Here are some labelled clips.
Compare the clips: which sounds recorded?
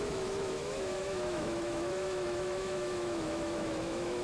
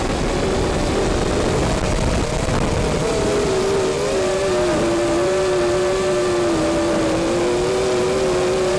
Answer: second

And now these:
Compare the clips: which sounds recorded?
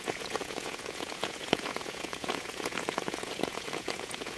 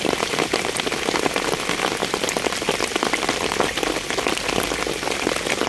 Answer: second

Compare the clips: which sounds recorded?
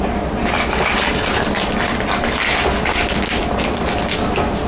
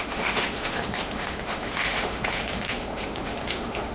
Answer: first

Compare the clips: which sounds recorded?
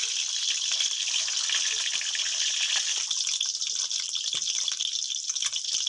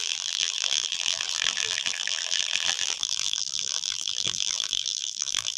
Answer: first